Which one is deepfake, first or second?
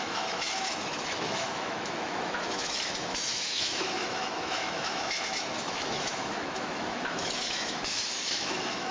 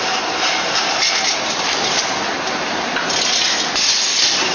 first